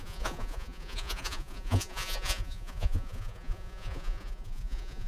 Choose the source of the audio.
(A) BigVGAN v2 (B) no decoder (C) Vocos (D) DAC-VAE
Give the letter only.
C